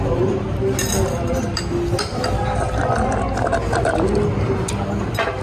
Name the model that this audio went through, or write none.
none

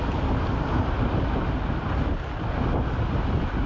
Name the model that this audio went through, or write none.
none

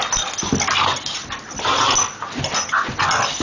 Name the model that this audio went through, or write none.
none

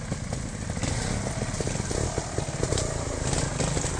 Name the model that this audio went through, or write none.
none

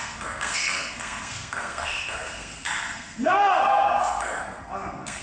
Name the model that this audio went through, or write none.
codec, SNAC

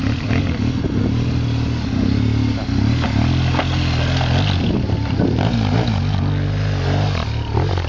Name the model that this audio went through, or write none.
none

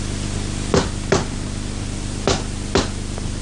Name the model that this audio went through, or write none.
none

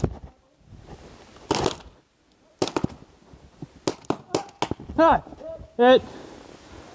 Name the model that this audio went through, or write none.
none